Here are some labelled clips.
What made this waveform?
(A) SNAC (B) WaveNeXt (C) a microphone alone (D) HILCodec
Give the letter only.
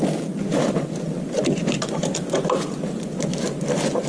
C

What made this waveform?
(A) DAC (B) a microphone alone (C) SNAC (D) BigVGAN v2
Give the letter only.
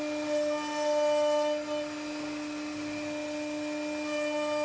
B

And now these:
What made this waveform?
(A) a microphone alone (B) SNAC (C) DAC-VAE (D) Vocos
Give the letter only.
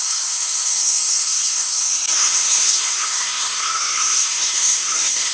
B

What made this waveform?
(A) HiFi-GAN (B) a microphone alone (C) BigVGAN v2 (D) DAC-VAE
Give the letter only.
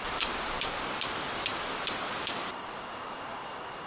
C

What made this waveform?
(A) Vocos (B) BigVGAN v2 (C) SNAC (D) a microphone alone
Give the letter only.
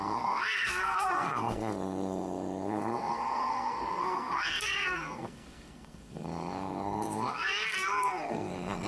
C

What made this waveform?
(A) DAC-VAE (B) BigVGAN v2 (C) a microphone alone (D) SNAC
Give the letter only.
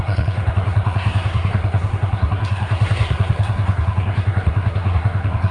D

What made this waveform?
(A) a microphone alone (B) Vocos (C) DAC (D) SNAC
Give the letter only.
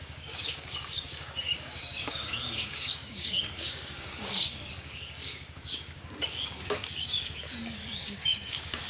C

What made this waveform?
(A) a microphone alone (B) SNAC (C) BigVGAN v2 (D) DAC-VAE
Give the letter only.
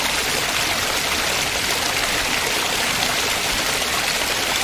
A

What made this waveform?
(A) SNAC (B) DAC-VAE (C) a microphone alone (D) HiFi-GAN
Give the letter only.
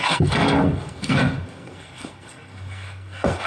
A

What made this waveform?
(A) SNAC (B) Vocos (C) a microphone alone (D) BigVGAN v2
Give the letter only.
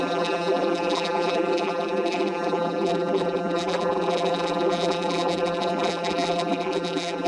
D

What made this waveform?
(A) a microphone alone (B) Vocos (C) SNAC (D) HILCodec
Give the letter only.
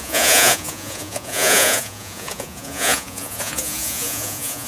B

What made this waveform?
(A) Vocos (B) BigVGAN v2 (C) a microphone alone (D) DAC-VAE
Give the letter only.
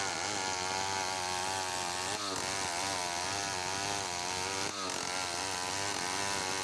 C